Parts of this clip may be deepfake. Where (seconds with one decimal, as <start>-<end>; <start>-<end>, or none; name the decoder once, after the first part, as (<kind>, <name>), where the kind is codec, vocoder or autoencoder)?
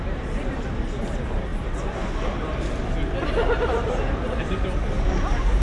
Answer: none